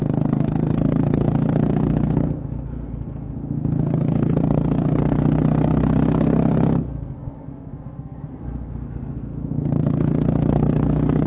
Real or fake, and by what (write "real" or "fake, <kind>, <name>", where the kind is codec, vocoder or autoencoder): fake, codec, SNAC